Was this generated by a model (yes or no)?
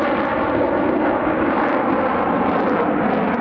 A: no